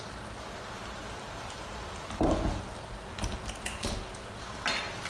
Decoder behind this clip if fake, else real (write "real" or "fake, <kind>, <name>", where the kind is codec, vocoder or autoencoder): fake, vocoder, BigVGAN v2